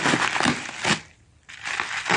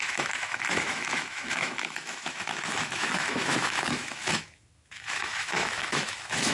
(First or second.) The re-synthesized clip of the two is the second